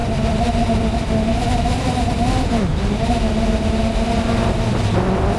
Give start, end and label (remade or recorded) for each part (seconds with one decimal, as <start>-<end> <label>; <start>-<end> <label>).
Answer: 0.0-5.4 recorded